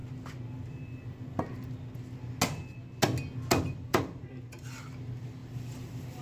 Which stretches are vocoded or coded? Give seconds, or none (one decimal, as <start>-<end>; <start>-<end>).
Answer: 3.7-6.2